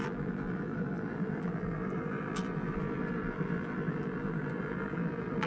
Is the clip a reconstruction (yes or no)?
yes